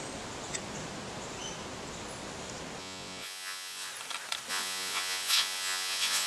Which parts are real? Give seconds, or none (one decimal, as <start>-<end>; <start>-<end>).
0.0-2.8; 3.9-4.5